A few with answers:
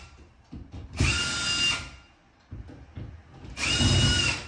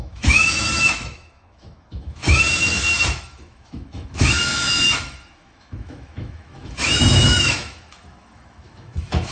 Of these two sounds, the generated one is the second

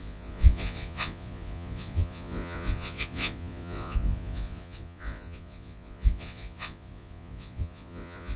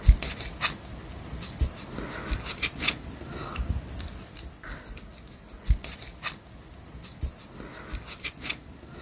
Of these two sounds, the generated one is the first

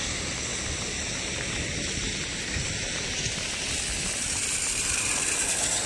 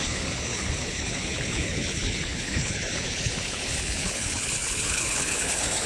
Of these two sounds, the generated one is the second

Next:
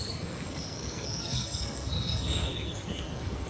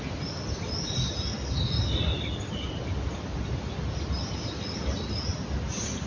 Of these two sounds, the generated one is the first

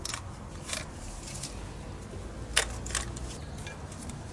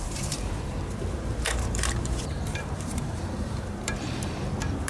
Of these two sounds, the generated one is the second